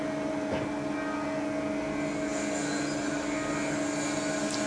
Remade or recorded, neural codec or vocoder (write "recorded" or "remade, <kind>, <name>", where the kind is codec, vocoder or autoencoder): recorded